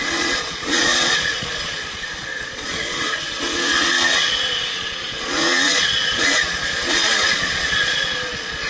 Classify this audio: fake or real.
fake